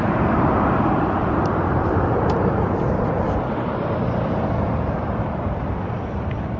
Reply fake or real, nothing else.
real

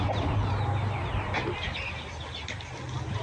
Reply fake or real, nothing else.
real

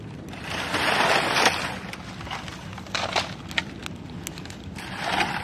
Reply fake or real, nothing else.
real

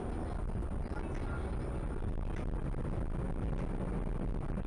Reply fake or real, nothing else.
real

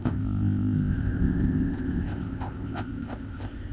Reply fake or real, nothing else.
fake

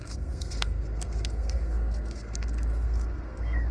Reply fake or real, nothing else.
fake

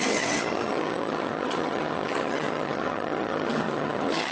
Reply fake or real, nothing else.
fake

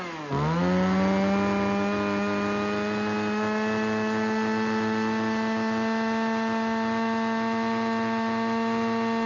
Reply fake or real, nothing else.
real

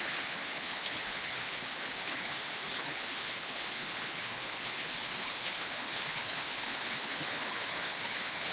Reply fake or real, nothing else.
fake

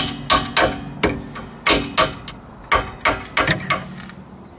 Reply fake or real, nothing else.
real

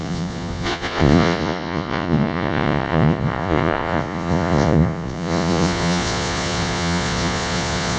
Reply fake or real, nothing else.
fake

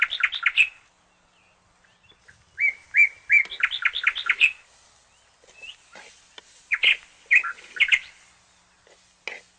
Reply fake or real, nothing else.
real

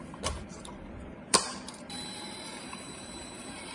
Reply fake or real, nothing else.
fake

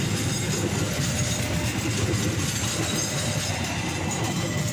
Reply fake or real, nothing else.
real